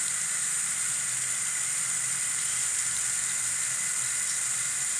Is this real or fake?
real